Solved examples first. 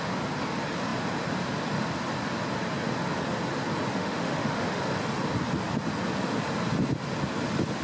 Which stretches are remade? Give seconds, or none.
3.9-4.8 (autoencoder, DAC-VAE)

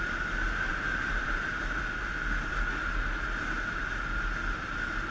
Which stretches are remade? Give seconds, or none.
none

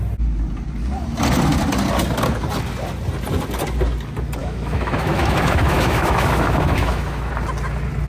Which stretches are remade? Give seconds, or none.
4.4-7.3 (autoencoder, DAC-VAE)

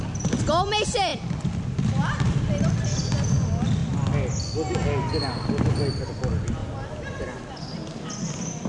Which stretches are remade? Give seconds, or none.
none

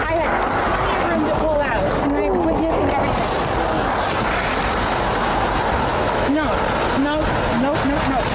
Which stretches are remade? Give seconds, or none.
5.9-6.6 (autoencoder, DAC-VAE)

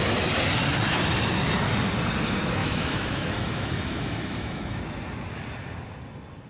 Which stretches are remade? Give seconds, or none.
2.6-4.8 (autoencoder, DAC-VAE)

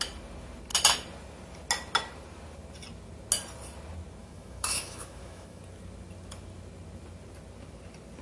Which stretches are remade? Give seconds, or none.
4.2-5.6 (autoencoder, DAC-VAE)

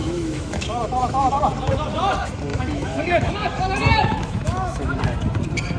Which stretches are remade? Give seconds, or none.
0.0-1.3 (autoencoder, DAC-VAE); 2.5-5.0